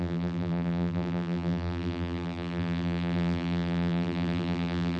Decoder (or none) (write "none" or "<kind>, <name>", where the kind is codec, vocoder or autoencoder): vocoder, BigVGAN v2